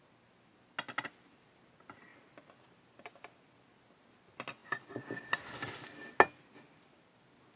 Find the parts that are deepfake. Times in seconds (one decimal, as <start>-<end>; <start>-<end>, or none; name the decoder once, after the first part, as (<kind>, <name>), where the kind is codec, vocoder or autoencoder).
none